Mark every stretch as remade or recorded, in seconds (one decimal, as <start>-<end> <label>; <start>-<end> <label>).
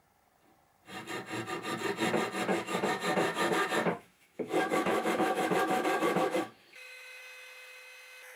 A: 0.0-2.5 recorded; 2.5-7.2 remade; 7.2-8.4 recorded